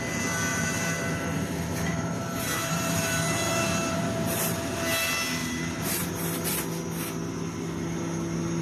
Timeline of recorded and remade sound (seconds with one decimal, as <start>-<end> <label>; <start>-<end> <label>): 0.0-0.5 recorded; 0.5-4.8 remade; 4.8-5.4 recorded; 5.4-6.1 remade; 6.1-8.6 recorded